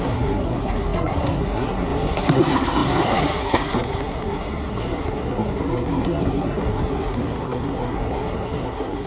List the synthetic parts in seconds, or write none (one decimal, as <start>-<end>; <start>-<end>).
0.0-9.1